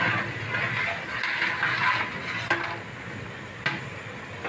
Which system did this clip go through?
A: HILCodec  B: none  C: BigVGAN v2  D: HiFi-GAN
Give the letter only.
B